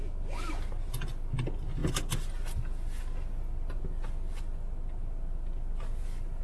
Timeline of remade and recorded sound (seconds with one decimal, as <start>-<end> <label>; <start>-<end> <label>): 0.0-6.4 recorded